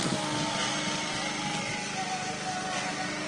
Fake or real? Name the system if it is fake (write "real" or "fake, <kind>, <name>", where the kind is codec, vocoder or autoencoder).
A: real